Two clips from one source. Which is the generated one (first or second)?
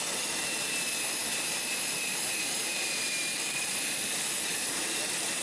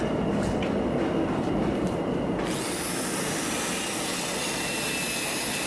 first